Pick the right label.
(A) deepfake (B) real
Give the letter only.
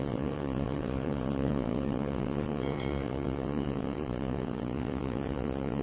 A